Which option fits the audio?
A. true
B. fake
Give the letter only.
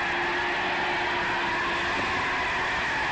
A